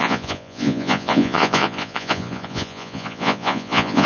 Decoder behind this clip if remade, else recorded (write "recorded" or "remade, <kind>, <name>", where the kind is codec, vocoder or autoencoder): remade, vocoder, Vocos